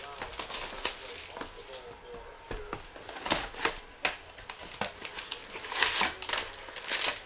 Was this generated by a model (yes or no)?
no